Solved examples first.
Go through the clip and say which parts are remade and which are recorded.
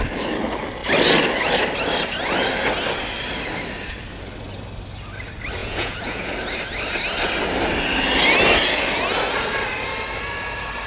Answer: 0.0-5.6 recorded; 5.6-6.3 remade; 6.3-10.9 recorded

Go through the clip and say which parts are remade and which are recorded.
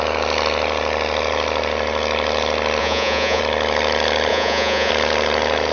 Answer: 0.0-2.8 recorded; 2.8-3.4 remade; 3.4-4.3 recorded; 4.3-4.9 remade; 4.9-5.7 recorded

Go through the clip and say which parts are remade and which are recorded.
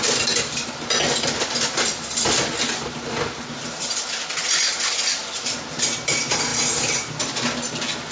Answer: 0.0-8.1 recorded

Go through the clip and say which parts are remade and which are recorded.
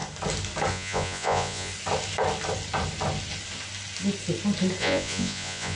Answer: 0.0-0.7 recorded; 0.7-1.7 remade; 1.7-4.8 recorded; 4.8-5.8 remade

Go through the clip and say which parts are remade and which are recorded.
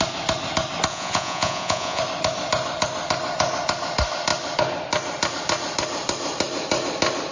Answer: 0.0-0.9 recorded; 0.9-2.0 remade; 2.0-7.3 recorded